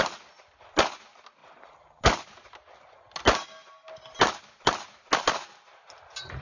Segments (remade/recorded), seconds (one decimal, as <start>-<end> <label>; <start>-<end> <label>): 0.0-6.4 recorded